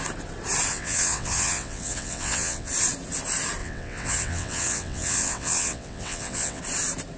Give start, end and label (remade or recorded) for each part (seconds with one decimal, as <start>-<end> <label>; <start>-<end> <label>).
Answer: 0.0-0.7 recorded; 0.7-2.7 remade; 2.7-3.6 recorded; 3.6-6.6 remade; 6.6-7.2 recorded